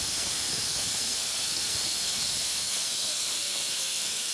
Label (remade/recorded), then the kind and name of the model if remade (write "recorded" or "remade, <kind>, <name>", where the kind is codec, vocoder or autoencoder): remade, codec, SNAC